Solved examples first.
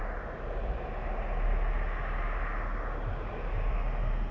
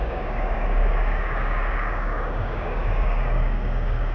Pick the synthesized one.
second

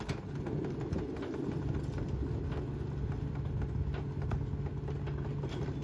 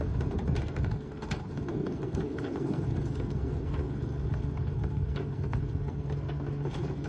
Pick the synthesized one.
second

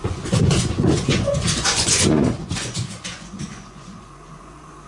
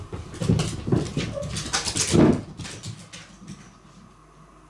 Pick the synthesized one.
first